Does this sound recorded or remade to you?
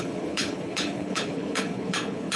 remade